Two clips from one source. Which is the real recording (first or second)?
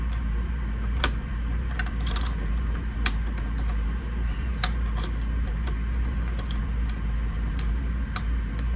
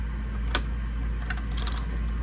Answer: second